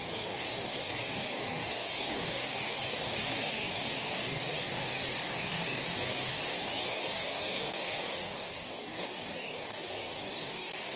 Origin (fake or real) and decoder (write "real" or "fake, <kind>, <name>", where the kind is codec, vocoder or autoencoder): fake, codec, DAC